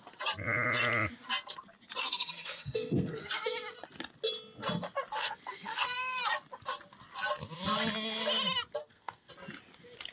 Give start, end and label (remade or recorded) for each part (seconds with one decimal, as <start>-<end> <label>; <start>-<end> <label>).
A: 0.0-2.0 recorded; 2.0-3.2 remade; 3.2-5.2 recorded; 5.2-6.2 remade; 6.2-8.8 recorded; 8.8-9.3 remade; 9.3-10.1 recorded